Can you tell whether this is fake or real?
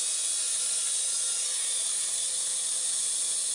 real